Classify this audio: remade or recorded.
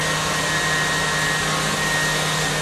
recorded